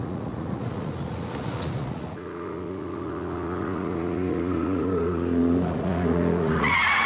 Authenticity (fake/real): fake